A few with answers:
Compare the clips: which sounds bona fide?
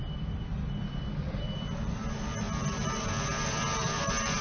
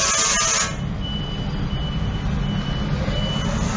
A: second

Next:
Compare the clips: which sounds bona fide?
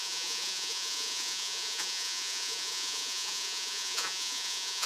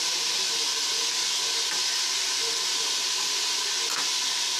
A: second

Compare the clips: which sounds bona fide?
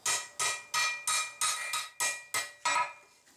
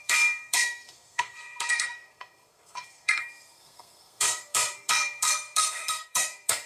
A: first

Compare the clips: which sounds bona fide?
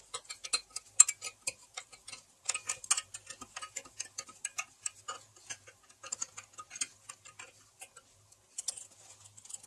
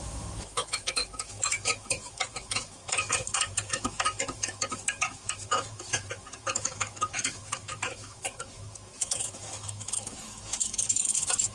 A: first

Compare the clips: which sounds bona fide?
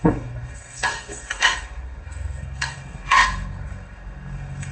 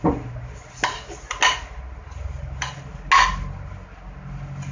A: second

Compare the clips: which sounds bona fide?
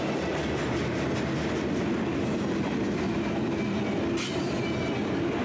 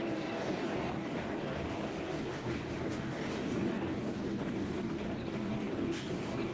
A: first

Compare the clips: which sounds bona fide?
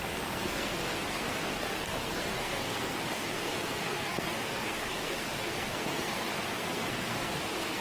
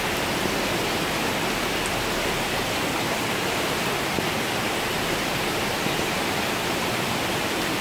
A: second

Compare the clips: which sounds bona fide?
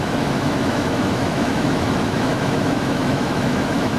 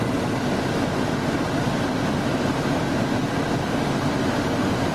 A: second